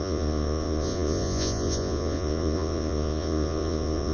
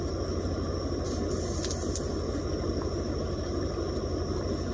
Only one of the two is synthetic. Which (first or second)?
first